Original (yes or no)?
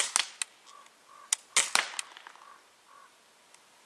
yes